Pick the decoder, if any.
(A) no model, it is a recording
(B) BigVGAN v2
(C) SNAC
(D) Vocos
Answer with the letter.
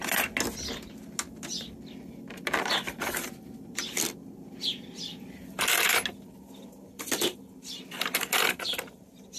A